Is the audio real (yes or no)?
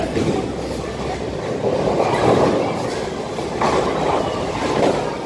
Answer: yes